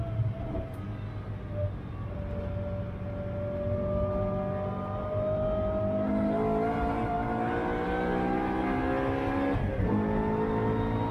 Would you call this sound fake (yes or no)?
no